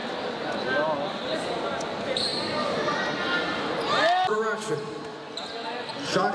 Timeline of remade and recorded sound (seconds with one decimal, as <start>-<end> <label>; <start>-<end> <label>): 0.0-6.3 recorded